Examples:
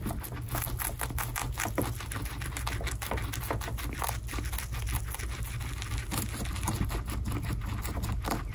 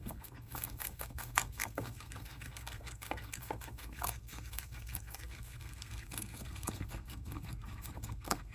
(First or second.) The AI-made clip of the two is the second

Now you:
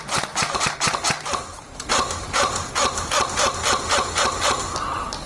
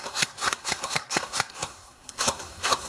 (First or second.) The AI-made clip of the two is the second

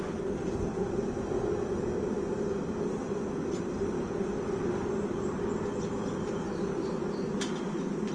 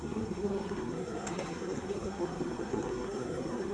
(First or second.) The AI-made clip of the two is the second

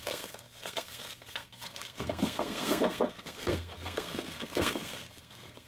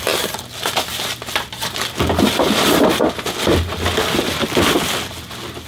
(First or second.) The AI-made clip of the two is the first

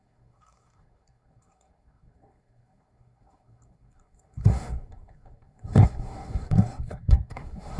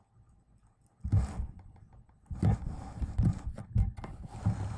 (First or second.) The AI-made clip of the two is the first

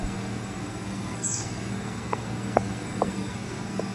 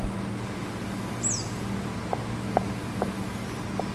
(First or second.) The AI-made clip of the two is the first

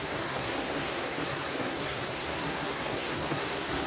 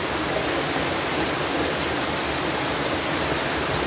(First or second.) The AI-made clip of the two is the first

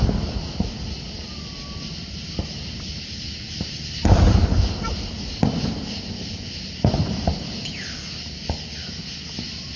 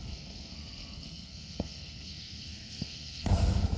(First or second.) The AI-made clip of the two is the second